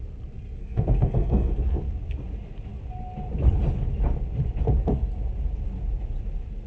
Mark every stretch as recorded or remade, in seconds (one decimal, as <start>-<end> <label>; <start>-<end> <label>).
0.0-0.6 recorded; 0.6-1.5 remade; 1.5-6.7 recorded